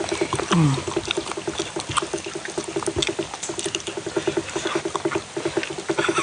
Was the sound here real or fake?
real